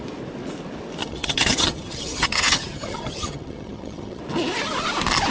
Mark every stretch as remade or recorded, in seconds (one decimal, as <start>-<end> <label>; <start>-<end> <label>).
0.0-1.0 recorded; 1.0-4.2 remade; 4.2-5.3 recorded